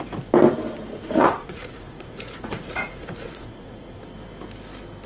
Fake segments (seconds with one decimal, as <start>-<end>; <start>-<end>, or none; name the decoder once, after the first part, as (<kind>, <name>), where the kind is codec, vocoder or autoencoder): 0.9-4.0 (vocoder, Vocos)